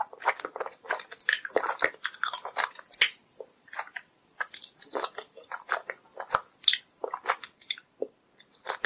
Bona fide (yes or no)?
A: yes